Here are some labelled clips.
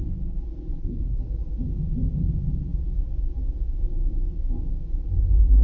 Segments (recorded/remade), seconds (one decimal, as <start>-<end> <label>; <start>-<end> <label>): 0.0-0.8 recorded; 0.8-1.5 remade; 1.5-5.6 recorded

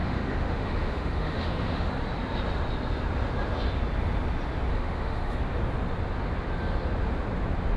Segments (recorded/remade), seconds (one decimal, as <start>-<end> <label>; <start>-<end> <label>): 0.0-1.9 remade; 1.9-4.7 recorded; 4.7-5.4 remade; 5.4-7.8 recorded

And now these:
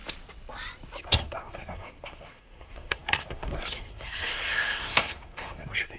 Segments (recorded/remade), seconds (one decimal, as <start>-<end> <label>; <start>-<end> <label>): 0.0-1.0 recorded; 1.0-6.0 remade